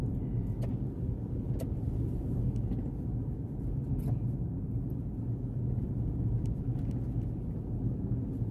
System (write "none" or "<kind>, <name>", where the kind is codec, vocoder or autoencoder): none